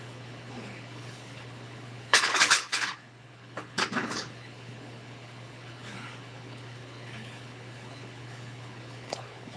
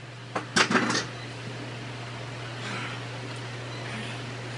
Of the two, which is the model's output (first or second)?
first